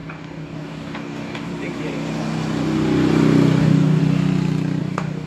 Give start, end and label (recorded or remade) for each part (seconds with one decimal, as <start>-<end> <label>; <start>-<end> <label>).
0.0-1.5 remade; 1.5-3.6 recorded; 3.6-4.0 remade; 4.0-4.8 recorded; 4.8-5.3 remade